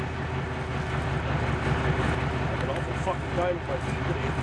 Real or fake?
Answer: real